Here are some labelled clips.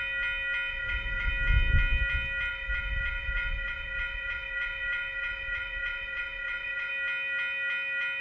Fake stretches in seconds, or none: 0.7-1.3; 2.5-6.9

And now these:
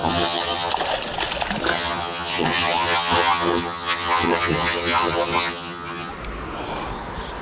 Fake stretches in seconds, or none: 0.0-0.7; 1.7-6.1

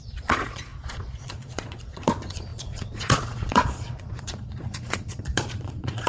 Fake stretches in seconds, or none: 0.0-6.1

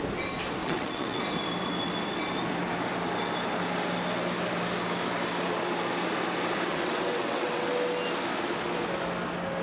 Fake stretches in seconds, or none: 0.6-1.2; 6.7-7.7

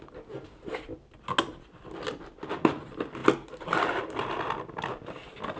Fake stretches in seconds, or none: none